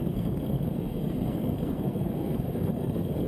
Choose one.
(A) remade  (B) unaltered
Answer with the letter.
A